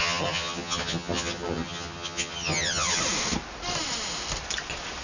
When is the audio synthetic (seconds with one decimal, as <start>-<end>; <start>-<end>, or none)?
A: 0.0-3.0